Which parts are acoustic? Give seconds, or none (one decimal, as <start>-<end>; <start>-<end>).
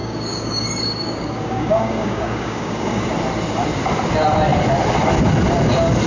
3.1-6.1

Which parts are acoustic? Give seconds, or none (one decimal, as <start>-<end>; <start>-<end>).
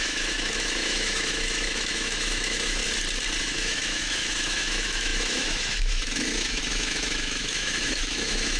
2.8-3.4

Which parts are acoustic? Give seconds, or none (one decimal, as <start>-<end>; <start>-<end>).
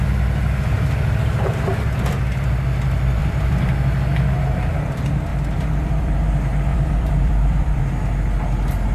0.0-3.2; 3.7-5.3; 6.3-6.7; 7.8-8.9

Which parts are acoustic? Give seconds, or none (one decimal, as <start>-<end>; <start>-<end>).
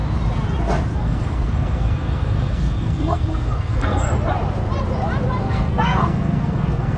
0.0-1.0; 4.1-5.4